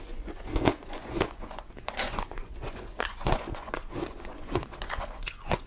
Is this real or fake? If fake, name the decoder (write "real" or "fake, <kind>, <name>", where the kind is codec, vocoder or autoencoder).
fake, vocoder, Vocos